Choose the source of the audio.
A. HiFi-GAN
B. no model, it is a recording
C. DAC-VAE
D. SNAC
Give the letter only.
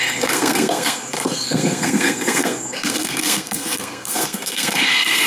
D